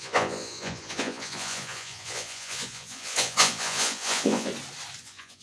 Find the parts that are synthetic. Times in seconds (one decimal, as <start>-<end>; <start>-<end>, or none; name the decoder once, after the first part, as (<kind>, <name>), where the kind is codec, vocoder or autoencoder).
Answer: 0.0-4.5 (vocoder, Vocos); 5.0-5.4